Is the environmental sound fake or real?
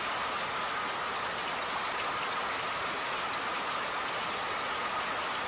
real